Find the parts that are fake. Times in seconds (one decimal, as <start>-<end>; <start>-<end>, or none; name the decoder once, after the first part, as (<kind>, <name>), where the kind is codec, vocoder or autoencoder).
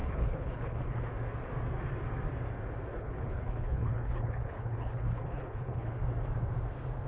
0.0-1.1 (codec, HILCodec); 2.9-6.0